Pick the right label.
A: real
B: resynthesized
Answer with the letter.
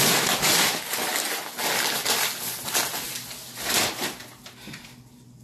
A